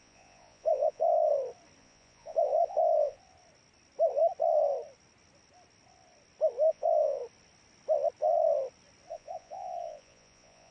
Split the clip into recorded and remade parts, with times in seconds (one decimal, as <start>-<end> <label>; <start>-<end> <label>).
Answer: 0.0-1.3 remade; 1.3-1.8 recorded; 1.8-3.2 remade; 3.2-6.7 recorded; 6.7-7.2 remade; 7.2-9.1 recorded; 9.1-10.7 remade